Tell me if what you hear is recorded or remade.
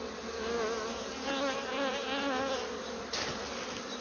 recorded